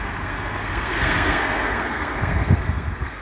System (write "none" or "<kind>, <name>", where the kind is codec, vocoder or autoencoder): codec, SNAC